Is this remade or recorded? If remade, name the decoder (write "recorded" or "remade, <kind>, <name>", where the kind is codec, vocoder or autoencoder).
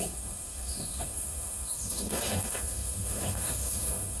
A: remade, autoencoder, DAC-VAE